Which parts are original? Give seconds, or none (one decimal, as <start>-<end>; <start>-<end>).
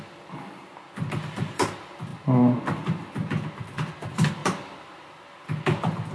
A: 0.0-6.1